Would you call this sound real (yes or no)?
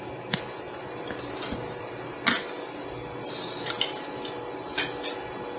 yes